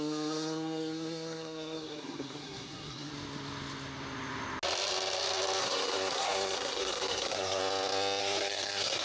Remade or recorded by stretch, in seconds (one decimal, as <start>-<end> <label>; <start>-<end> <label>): 0.0-3.1 remade; 3.1-5.6 recorded; 5.6-7.6 remade; 7.6-8.2 recorded; 8.2-9.0 remade